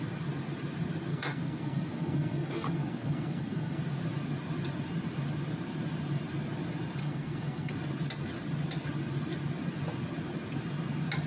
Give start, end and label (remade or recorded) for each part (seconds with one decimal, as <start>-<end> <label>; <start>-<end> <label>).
0.0-1.1 recorded; 1.1-3.8 remade; 3.8-7.0 recorded; 7.0-7.7 remade; 7.7-11.3 recorded